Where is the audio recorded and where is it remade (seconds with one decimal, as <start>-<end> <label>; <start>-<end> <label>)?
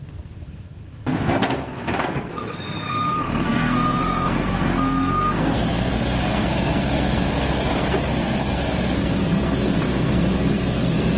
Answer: 0.0-11.2 remade